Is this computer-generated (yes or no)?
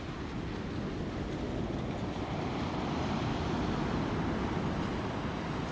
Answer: no